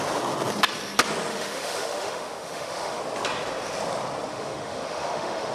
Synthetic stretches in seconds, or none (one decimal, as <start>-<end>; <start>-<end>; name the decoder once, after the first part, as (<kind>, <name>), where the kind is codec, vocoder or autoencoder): 1.3-3.0 (autoencoder, DAC-VAE); 4.3-5.5